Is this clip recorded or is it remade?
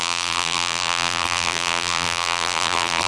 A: remade